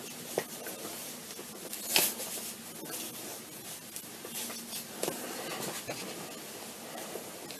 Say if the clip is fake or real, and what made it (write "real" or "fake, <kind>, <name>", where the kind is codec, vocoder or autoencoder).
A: real